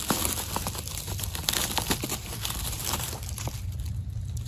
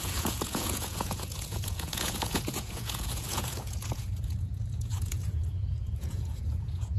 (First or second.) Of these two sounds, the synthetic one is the second